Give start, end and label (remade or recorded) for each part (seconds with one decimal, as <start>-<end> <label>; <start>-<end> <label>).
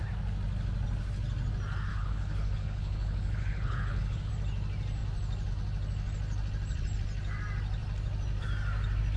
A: 0.0-1.9 recorded; 1.9-4.3 remade; 4.3-9.2 recorded